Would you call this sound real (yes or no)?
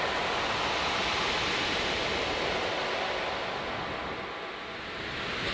yes